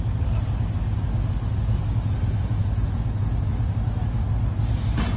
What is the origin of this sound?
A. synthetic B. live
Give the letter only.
B